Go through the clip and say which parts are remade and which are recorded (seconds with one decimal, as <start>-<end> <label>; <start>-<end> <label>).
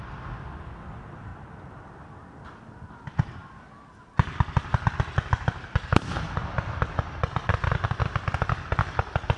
0.0-9.4 recorded